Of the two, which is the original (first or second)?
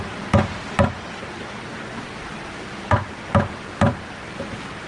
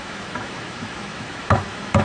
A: first